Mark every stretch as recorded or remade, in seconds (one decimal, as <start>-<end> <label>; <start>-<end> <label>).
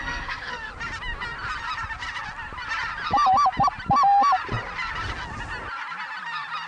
0.0-0.7 remade; 0.7-6.7 recorded